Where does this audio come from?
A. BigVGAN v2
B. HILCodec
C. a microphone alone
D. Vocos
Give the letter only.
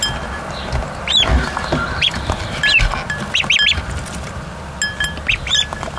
C